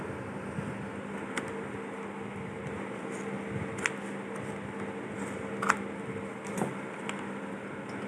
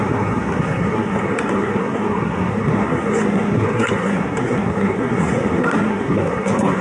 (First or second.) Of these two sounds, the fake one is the second